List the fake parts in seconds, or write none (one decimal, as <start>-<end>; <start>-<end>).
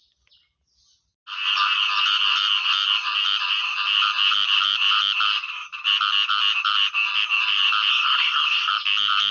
7.9-8.7